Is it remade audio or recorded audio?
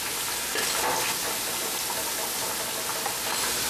recorded